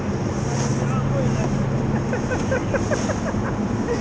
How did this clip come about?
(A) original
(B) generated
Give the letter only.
A